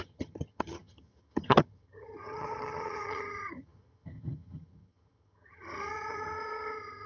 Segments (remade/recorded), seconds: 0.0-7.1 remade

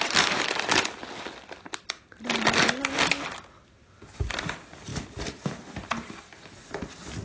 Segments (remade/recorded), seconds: 0.0-7.2 recorded

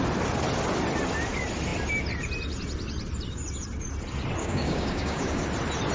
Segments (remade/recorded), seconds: 0.0-4.4 recorded; 4.4-5.4 remade; 5.4-5.9 recorded

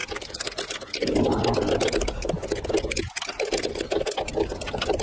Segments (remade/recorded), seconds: 0.0-5.0 remade